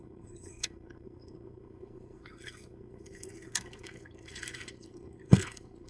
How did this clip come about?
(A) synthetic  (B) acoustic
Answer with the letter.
A